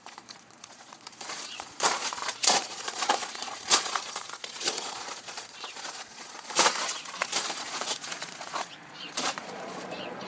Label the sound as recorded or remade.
remade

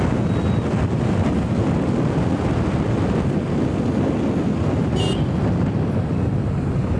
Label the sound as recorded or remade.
recorded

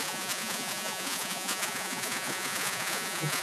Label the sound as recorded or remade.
remade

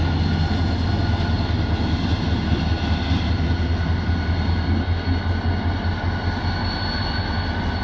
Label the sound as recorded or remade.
recorded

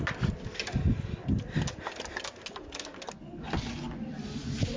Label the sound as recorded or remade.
recorded